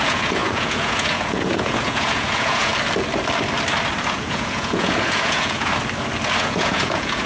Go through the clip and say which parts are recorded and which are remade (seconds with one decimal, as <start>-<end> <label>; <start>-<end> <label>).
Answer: 0.0-2.7 remade; 2.7-4.1 recorded; 4.1-5.7 remade; 5.7-6.4 recorded; 6.4-7.3 remade